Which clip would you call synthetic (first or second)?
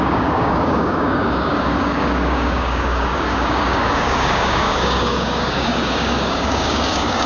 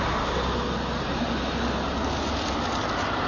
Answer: first